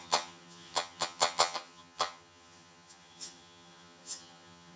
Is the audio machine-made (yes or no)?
yes